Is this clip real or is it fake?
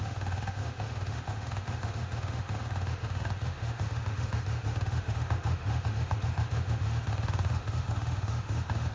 fake